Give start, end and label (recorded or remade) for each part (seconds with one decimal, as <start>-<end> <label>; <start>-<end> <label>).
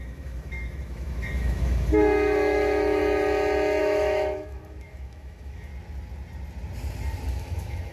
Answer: 0.0-3.0 remade; 3.0-3.8 recorded; 3.8-5.7 remade; 5.7-7.3 recorded; 7.3-7.9 remade